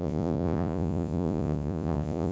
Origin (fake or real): fake